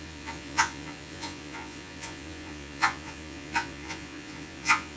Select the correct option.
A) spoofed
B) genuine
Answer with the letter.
A